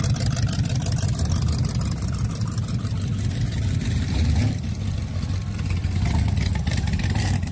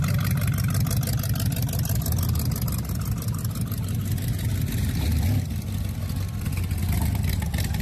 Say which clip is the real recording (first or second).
second